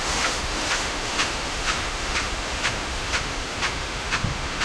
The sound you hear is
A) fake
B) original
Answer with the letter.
A